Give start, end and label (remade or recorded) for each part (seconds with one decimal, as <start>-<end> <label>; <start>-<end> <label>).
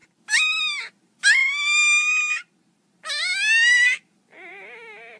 0.0-5.2 recorded